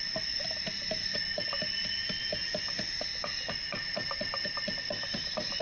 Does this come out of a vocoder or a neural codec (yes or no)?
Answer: no